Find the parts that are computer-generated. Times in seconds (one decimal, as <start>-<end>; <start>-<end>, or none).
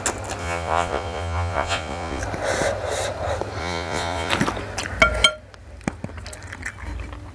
0.4-2.2; 3.6-4.3